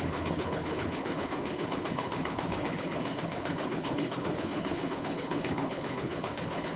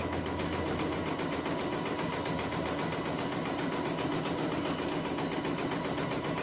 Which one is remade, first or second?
first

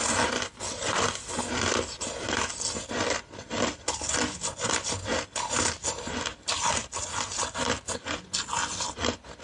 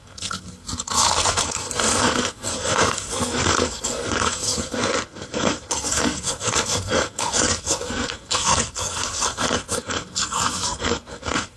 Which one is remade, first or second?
second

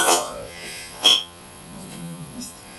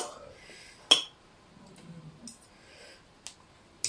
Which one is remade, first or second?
first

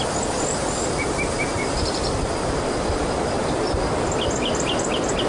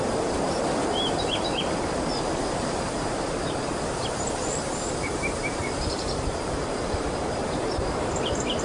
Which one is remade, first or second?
second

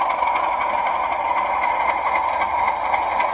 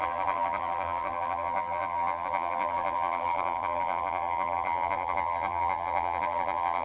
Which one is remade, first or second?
second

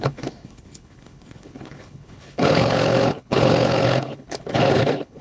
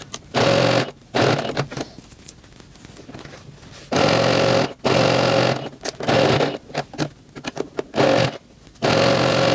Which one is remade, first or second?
first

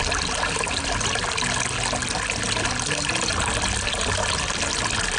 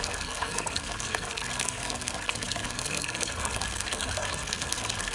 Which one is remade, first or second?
second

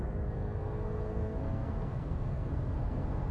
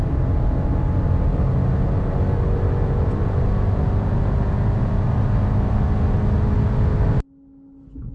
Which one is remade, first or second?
first